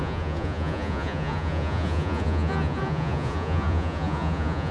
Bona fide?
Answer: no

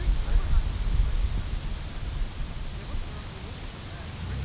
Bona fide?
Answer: yes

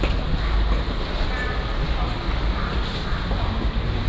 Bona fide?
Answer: yes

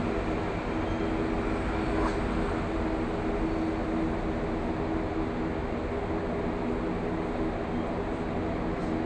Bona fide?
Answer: yes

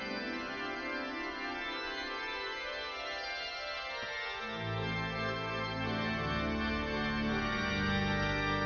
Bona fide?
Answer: yes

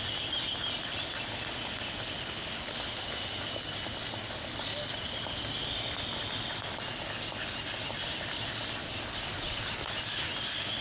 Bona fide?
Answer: yes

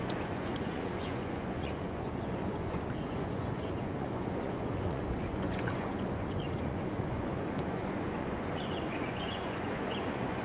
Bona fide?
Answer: no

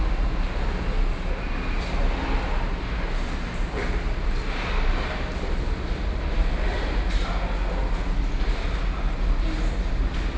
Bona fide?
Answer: yes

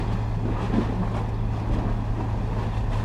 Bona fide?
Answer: yes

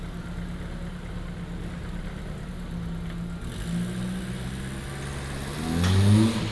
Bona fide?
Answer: yes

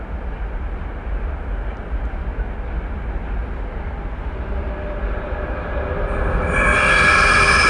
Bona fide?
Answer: yes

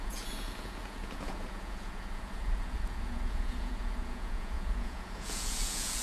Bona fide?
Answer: no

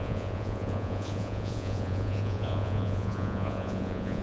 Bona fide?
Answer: no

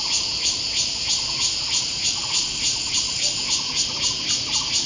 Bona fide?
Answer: yes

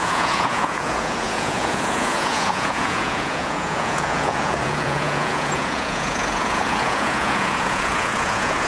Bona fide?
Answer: no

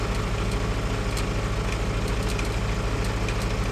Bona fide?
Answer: yes